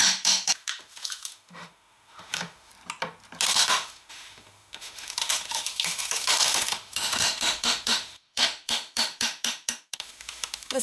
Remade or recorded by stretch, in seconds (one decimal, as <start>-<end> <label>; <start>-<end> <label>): 0.0-2.7 remade; 2.7-3.5 recorded; 3.5-10.8 remade

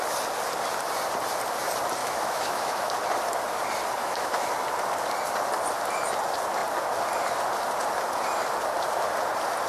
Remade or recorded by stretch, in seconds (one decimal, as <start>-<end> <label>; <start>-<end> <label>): 0.0-2.0 recorded; 2.0-2.9 remade; 2.9-4.0 recorded; 4.0-4.5 remade; 4.5-9.7 recorded

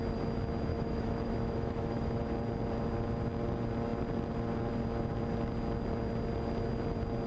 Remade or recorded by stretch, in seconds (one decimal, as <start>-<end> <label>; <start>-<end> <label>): 0.0-0.7 recorded; 0.7-2.2 remade; 2.2-7.3 recorded

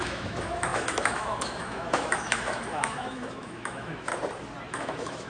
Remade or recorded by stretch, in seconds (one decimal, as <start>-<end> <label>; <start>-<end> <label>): 0.0-4.1 remade; 4.1-4.7 recorded; 4.7-5.3 remade

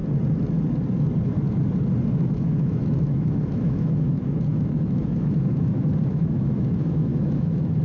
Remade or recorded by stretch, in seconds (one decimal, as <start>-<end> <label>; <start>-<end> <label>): 0.0-2.1 recorded; 2.1-7.8 remade

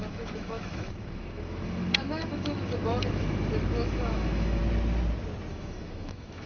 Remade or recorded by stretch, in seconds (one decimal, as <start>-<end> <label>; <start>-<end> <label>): 0.0-4.6 remade; 4.6-5.5 recorded; 5.5-6.5 remade

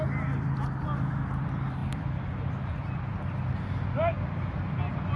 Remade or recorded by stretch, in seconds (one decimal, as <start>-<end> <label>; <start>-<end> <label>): 0.0-5.2 recorded

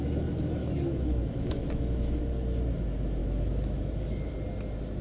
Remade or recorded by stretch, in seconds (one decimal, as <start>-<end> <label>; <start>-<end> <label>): 0.0-0.6 recorded; 0.6-2.2 remade; 2.2-3.2 recorded; 3.2-4.3 remade; 4.3-5.0 recorded